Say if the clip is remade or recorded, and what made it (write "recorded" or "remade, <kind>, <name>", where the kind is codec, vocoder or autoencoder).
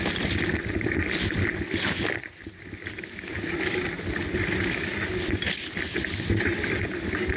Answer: recorded